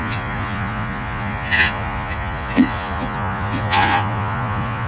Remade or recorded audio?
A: remade